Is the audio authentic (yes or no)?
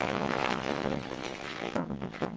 no